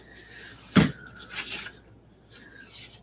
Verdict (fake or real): real